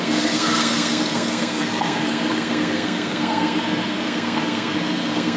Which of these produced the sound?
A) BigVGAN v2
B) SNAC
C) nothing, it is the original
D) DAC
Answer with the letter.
B